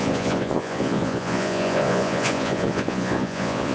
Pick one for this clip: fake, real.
fake